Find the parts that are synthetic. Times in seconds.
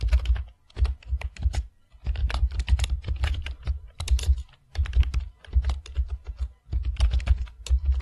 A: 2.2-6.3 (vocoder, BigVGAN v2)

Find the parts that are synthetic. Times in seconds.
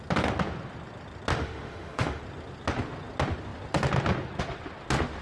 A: 1.3-2.2 (autoencoder, DAC-VAE)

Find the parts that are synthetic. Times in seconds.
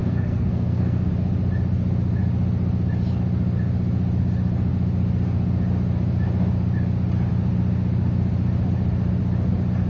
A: 0.0-1.1 (codec, SNAC)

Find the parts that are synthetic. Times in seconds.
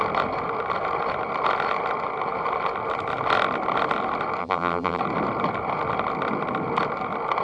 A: 4.4-5.0 (vocoder, BigVGAN v2)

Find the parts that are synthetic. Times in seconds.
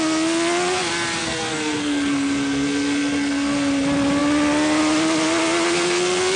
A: 1.2-3.7 (codec, SNAC)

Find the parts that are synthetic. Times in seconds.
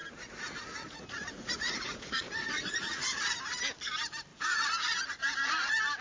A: 0.0-3.6 (vocoder, Vocos); 4.3-5.2